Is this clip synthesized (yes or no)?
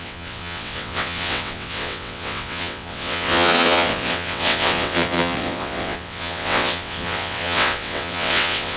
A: yes